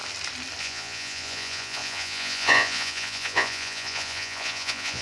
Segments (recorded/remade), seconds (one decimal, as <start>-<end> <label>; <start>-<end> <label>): 0.0-0.6 recorded; 0.6-5.0 remade